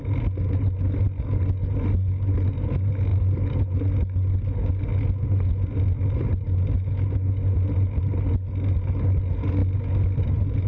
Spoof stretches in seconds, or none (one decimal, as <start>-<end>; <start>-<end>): none